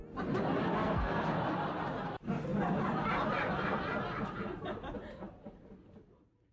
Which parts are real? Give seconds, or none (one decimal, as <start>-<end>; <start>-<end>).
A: 0.0-0.7; 1.3-6.5